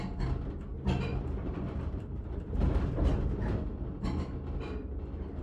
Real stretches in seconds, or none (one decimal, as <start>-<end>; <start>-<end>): 0.0-1.1; 3.1-5.4